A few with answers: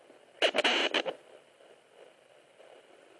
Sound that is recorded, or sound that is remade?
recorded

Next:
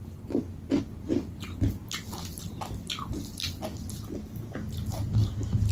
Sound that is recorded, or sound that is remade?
recorded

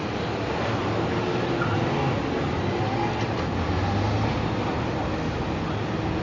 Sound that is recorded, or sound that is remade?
recorded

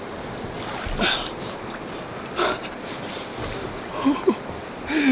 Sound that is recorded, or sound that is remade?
recorded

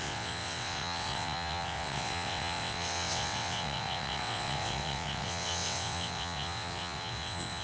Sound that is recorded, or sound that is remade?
remade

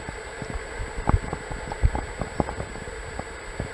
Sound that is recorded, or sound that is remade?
recorded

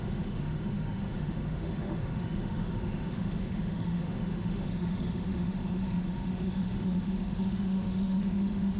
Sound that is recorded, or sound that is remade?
remade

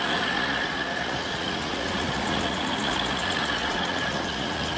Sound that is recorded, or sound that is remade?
remade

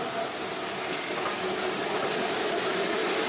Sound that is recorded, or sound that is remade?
recorded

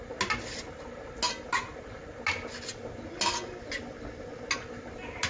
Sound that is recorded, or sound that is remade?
recorded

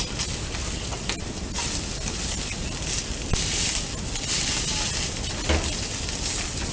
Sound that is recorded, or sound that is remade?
recorded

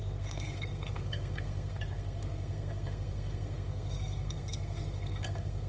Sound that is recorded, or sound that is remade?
remade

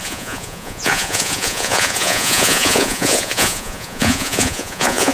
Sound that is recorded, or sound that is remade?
remade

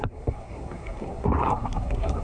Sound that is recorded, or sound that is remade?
remade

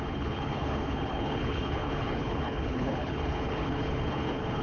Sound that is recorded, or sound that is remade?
remade